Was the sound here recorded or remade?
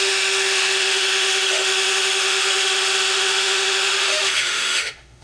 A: remade